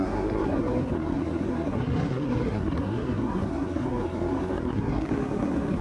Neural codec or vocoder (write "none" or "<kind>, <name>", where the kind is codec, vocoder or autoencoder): codec, SNAC